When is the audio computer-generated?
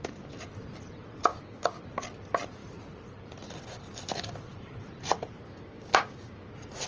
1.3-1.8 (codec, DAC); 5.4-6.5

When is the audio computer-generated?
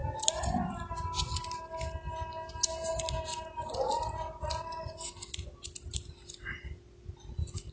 2.9-3.3 (vocoder, BigVGAN v2)